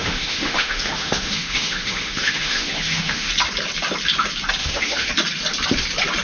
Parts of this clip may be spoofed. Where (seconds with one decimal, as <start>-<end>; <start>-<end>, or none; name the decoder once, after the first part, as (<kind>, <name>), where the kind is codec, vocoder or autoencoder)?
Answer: 0.0-3.3 (autoencoder, DAC-VAE); 4.6-5.1

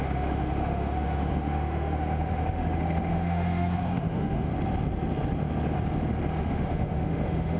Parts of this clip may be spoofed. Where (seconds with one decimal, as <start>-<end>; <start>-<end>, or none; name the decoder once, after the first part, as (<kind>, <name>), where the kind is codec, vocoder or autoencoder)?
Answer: 0.0-4.5 (autoencoder, DAC-VAE); 6.4-7.6

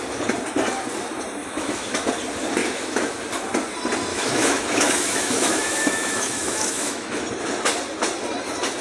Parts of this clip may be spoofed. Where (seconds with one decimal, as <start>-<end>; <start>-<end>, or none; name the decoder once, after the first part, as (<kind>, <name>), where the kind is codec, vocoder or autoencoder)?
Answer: 1.4-2.1 (autoencoder, DAC-VAE); 2.6-3.2; 4.1-7.2

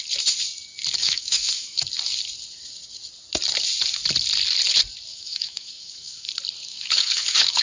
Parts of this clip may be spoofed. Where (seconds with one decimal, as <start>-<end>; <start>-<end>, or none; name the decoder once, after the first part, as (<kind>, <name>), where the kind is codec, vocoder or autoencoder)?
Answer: 1.0-1.9 (autoencoder, DAC-VAE); 5.1-6.3; 6.7-7.6

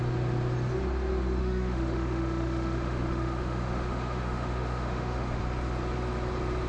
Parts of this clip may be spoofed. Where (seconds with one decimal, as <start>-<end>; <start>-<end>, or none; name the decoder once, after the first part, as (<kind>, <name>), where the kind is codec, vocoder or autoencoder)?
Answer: 1.4-5.4 (autoencoder, DAC-VAE)

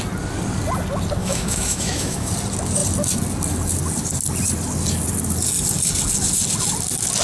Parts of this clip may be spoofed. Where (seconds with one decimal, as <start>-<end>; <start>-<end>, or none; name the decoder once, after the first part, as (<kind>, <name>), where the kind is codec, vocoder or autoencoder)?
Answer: 1.2-2.3 (autoencoder, DAC-VAE)

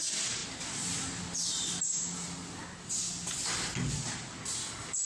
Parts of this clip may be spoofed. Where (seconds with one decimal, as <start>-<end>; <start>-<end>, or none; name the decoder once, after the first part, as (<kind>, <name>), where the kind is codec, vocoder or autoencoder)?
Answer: none